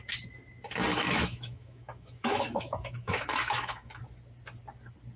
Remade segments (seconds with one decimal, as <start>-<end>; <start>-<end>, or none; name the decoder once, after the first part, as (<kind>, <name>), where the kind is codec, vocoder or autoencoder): 0.9-4.0 (autoencoder, DAC-VAE)